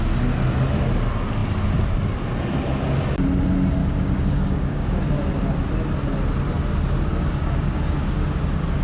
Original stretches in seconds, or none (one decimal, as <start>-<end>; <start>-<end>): 0.0-3.8; 5.0-7.1; 8.4-8.8